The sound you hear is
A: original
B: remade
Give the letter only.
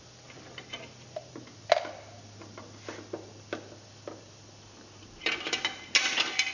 A